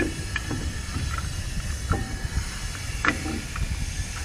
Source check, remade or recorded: recorded